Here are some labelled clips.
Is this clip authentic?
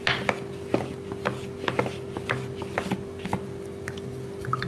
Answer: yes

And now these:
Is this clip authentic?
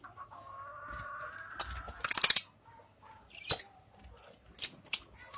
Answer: yes